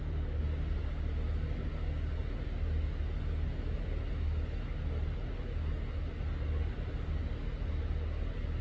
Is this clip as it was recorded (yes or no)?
yes